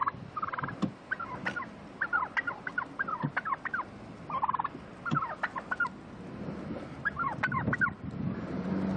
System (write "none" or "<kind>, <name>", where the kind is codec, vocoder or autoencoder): none